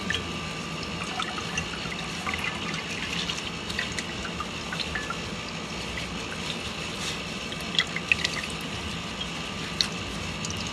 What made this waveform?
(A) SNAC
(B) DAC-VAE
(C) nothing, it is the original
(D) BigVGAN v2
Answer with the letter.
C